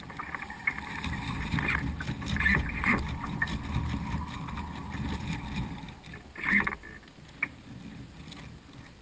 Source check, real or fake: real